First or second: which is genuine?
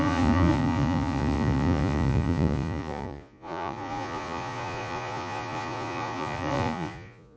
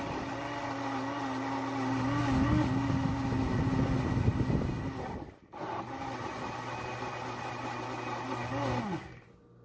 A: second